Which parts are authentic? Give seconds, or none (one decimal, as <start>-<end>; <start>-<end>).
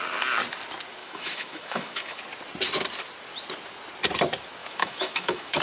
0.0-1.0; 2.2-4.6